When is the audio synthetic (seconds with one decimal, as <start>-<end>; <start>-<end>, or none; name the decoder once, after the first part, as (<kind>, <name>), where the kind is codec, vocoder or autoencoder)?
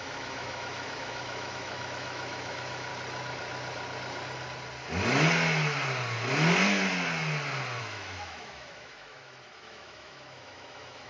0.0-2.9 (autoencoder, DAC-VAE); 7.8-11.1